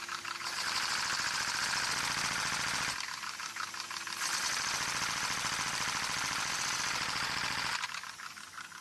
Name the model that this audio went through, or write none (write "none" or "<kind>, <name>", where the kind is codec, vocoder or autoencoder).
none